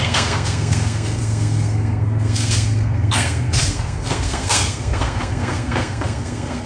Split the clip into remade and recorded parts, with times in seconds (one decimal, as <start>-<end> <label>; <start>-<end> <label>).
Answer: 0.0-6.7 remade